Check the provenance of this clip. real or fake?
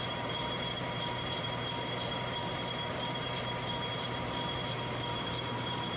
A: fake